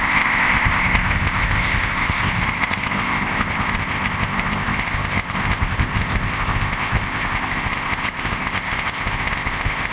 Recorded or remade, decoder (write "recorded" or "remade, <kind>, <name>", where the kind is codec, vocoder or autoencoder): remade, codec, ZipCodec